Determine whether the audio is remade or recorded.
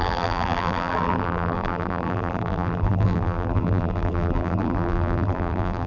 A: remade